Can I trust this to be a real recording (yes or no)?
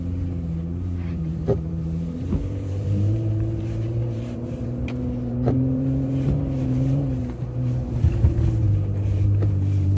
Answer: no